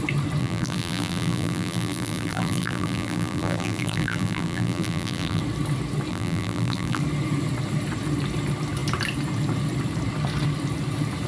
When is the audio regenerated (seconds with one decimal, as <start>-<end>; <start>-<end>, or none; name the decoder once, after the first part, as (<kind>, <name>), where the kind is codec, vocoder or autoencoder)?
0.4-5.4 (vocoder, BigVGAN v2); 6.1-7.0